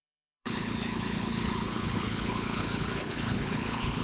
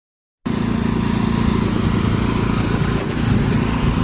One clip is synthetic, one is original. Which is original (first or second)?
second